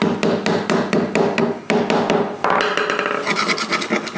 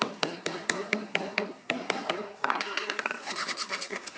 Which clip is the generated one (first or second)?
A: second